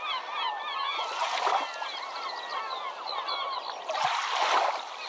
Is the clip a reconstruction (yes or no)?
no